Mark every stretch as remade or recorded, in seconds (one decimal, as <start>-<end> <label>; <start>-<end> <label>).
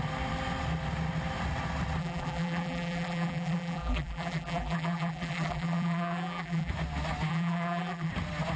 0.0-2.0 recorded; 2.0-6.7 remade; 6.7-7.3 recorded; 7.3-8.1 remade; 8.1-8.6 recorded